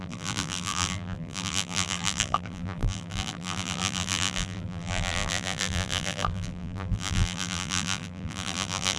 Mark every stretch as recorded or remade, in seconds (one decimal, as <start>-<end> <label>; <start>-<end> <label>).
0.0-9.0 remade